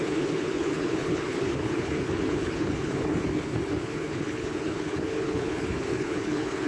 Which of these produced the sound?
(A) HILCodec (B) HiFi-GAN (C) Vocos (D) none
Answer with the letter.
A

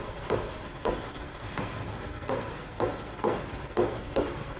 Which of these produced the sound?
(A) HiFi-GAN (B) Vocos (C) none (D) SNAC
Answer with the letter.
D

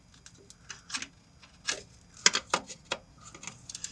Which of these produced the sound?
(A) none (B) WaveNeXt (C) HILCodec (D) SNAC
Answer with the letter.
A